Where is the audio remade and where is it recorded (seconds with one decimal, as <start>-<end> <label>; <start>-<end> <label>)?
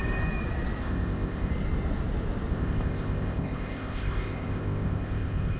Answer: 0.0-0.8 recorded; 0.8-1.5 remade; 1.5-2.5 recorded; 2.5-5.6 remade